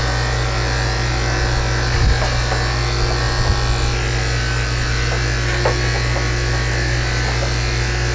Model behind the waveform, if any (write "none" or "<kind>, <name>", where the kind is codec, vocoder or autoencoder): none